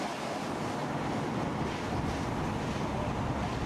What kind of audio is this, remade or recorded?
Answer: recorded